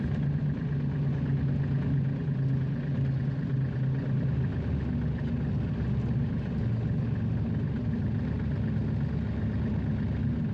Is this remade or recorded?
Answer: recorded